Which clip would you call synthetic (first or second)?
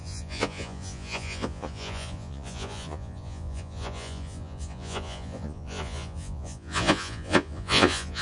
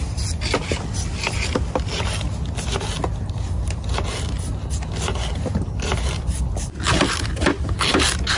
first